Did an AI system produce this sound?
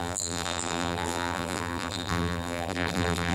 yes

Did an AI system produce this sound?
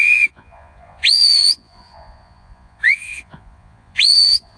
yes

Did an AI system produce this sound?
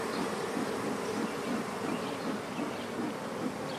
no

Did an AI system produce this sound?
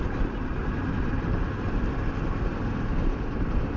no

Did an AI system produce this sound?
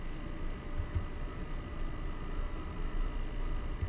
no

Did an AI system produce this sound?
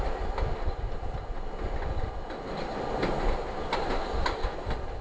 no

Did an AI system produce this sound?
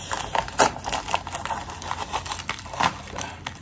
no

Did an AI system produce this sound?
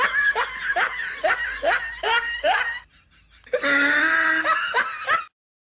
no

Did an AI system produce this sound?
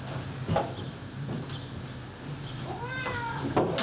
no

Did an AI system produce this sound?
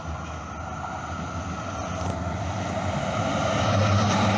no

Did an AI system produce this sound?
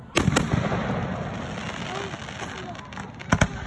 no